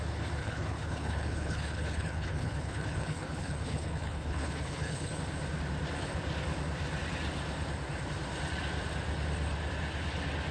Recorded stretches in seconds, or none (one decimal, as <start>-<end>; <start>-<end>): 0.0-0.4; 5.2-10.5